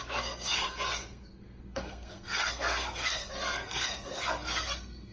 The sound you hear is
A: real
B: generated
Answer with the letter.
B